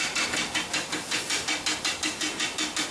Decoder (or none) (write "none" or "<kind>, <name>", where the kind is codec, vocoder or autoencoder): none